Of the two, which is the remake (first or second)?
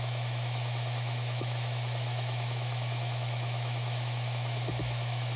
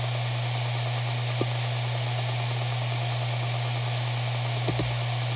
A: first